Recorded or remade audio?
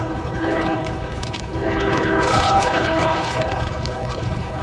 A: remade